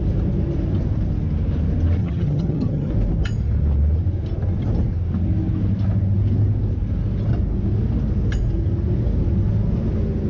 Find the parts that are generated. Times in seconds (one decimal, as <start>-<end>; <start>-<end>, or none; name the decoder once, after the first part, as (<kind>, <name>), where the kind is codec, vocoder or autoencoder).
2.0-2.9 (vocoder, HiFi-GAN)